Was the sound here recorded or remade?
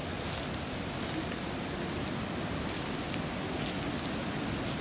recorded